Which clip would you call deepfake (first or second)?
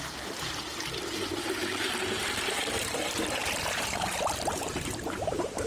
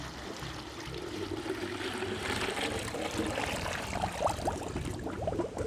first